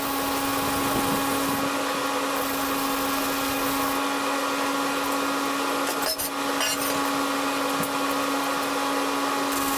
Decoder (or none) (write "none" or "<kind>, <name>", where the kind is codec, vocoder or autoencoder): none